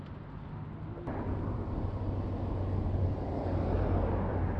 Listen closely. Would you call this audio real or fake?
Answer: real